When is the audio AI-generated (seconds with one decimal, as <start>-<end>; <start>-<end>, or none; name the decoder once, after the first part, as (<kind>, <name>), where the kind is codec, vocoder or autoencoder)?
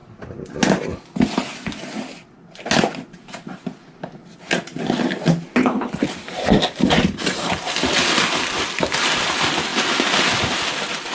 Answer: 5.6-6.1 (codec, HILCodec)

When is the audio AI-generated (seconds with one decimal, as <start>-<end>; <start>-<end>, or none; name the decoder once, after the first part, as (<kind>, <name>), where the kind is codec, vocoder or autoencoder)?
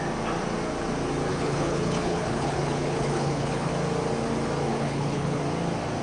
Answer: 1.3-3.7 (codec, HILCodec); 4.7-5.4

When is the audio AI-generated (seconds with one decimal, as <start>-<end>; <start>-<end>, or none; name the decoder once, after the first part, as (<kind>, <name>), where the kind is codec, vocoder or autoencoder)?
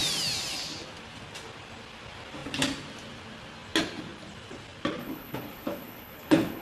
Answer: 5.0-6.6 (codec, HILCodec)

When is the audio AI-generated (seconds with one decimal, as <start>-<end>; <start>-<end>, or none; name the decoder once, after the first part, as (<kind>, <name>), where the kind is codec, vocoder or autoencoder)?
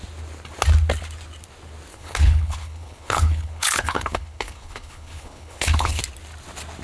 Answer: 1.9-6.0 (codec, HILCodec)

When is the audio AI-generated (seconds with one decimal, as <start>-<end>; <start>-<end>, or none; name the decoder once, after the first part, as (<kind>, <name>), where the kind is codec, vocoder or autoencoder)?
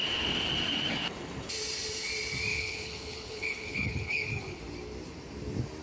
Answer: 2.5-4.6 (codec, HILCodec)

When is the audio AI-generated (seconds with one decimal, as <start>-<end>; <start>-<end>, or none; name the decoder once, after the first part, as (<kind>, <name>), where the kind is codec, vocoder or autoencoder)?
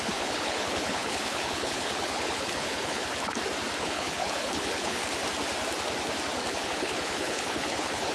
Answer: 0.0-3.0 (codec, HILCodec); 3.8-5.0; 6.5-8.1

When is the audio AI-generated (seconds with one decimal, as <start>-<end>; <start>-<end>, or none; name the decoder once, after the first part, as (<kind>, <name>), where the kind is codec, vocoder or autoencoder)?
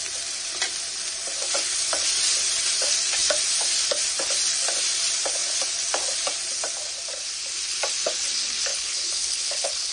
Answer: 8.7-9.9 (codec, HILCodec)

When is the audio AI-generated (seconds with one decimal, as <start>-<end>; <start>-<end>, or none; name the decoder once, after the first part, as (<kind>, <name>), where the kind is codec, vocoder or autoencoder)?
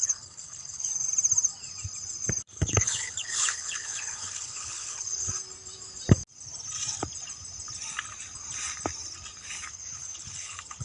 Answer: 0.0-0.9 (codec, HILCodec); 2.4-5.2; 9.7-10.8